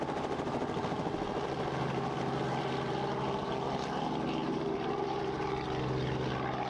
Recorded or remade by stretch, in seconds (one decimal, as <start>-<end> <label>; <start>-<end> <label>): 0.0-2.5 recorded; 2.5-3.0 remade; 3.0-4.4 recorded; 4.4-5.2 remade; 5.2-6.7 recorded